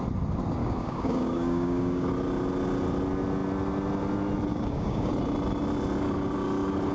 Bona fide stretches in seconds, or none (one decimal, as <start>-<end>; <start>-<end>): 0.0-0.6; 2.1-4.5; 5.1-6.9